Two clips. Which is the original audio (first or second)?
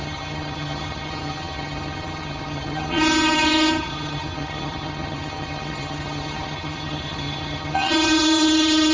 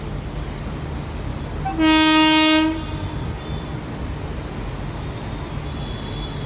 second